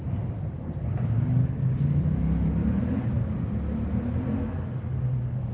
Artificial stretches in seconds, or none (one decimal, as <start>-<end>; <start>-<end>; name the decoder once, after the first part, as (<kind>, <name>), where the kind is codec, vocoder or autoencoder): none